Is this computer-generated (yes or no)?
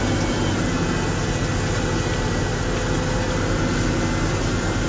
no